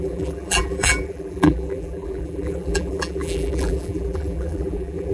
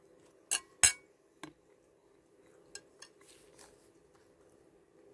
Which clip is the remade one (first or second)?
first